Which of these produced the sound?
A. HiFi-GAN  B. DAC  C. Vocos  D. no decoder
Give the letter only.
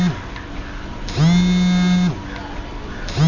D